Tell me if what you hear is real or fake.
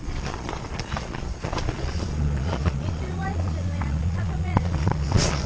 fake